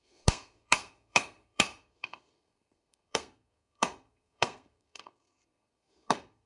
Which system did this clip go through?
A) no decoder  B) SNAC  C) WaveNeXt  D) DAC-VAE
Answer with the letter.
B